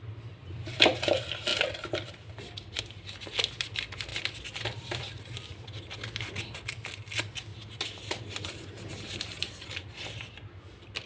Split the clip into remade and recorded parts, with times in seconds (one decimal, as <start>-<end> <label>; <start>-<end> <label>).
0.0-11.1 recorded